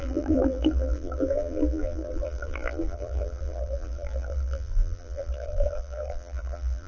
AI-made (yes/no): yes